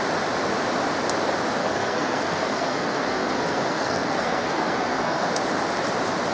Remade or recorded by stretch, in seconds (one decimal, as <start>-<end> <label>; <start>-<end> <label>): 0.0-1.6 recorded; 1.6-5.3 remade; 5.3-6.3 recorded